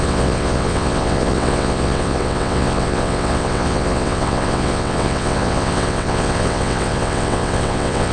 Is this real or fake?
fake